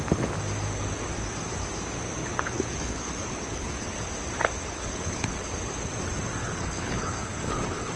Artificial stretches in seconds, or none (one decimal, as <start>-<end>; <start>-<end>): 2.2-4.1; 4.6-5.5; 6.4-8.0

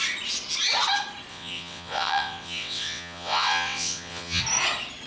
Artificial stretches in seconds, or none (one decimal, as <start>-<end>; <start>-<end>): 1.3-4.4